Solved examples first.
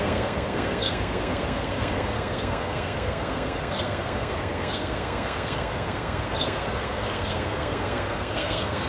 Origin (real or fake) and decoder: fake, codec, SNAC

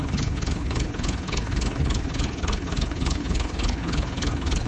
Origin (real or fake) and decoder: fake, codec, HILCodec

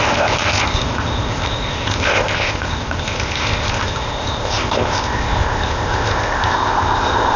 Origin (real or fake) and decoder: fake, codec, ZipCodec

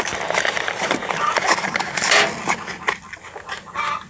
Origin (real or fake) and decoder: real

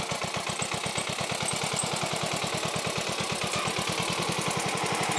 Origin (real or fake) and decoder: real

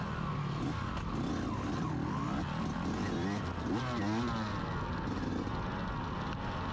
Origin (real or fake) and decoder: real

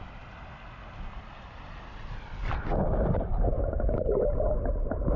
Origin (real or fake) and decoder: real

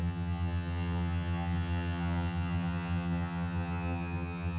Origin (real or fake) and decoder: fake, vocoder, HiFi-GAN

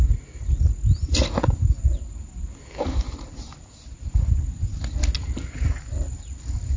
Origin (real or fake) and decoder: real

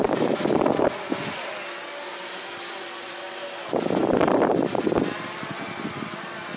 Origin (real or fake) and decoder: real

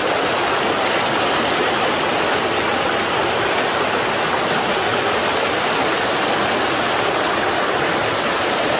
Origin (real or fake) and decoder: real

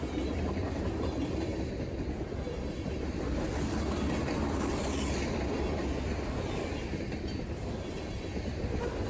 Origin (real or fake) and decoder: real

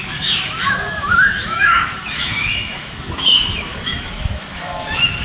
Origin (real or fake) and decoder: fake, autoencoder, DAC-VAE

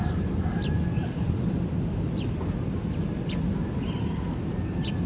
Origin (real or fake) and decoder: real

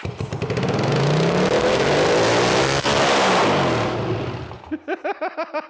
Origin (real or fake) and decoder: real